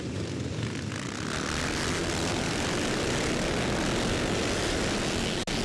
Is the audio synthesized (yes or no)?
no